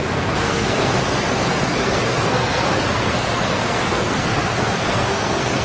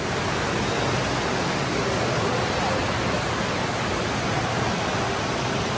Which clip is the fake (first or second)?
first